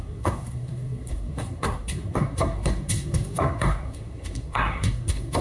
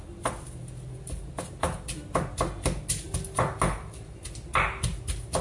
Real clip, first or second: second